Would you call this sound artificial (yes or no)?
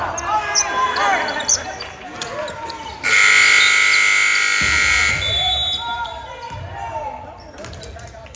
no